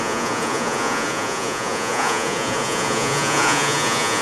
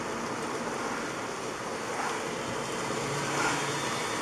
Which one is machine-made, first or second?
first